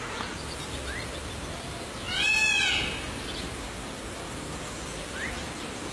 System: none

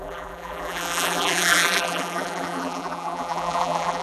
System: vocoder, BigVGAN v2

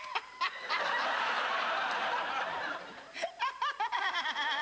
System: vocoder, BigVGAN v2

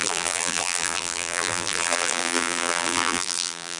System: vocoder, BigVGAN v2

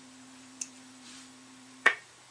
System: vocoder, BigVGAN v2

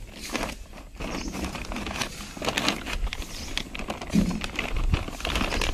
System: none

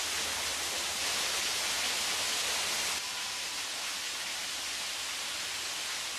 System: none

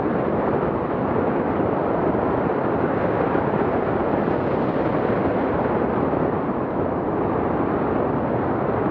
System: none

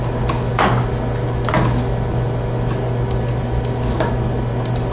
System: none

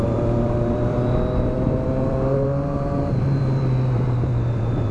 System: vocoder, BigVGAN v2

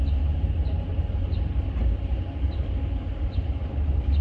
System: none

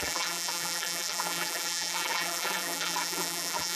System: vocoder, BigVGAN v2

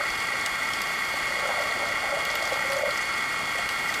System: none